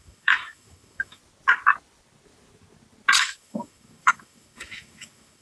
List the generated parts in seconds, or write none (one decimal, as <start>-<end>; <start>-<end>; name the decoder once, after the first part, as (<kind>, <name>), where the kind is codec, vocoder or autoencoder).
0.0-1.2 (autoencoder, DAC-VAE); 3.2-5.4